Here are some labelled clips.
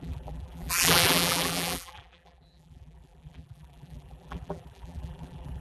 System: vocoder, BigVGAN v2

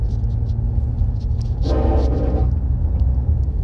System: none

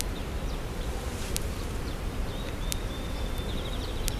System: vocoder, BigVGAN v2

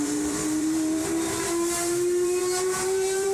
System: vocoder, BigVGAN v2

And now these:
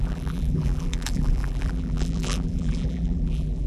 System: vocoder, BigVGAN v2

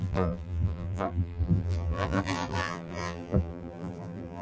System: vocoder, BigVGAN v2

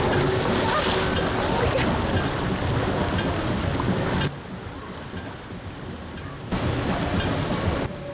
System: none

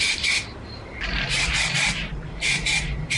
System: vocoder, BigVGAN v2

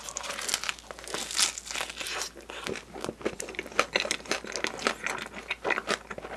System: none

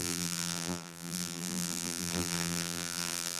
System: vocoder, BigVGAN v2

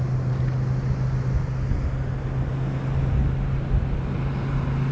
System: none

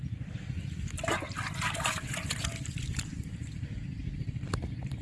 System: none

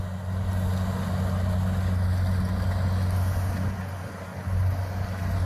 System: none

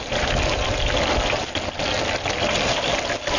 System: none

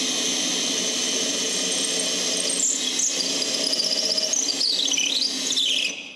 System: none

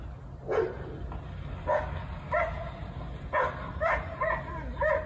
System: none